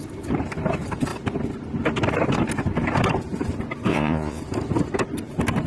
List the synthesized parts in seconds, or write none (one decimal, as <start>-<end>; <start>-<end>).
3.9-4.4